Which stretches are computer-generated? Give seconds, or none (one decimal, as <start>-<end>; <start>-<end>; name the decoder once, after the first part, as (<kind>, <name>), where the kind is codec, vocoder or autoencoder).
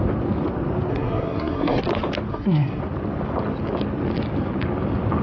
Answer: 0.9-1.8 (codec, SNAC); 2.3-2.8